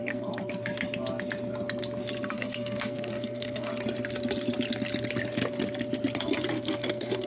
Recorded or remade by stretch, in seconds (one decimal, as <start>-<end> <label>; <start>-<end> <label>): 0.0-0.7 remade; 0.7-2.3 recorded; 2.3-3.7 remade; 3.7-6.5 recorded; 6.5-7.3 remade